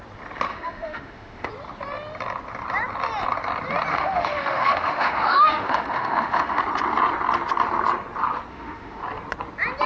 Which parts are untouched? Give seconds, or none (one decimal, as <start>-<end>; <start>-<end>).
0.0-0.5; 1.5-3.9; 6.6-8.5; 9.0-9.9